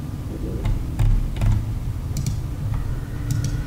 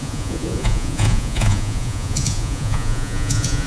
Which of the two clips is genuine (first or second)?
first